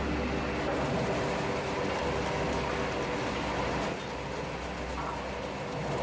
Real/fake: real